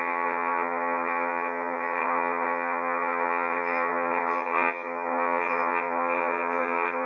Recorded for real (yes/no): no